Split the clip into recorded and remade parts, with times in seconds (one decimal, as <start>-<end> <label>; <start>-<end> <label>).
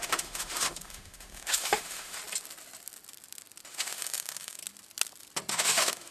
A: 0.0-2.2 remade; 2.2-3.7 recorded; 3.7-4.6 remade; 4.6-5.5 recorded; 5.5-6.1 remade